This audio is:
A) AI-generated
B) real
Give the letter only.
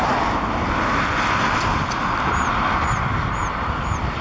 B